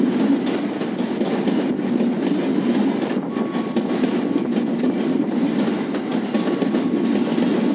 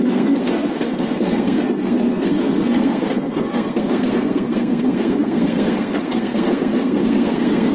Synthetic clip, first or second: second